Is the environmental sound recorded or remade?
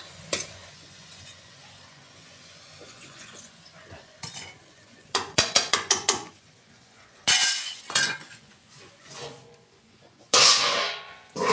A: remade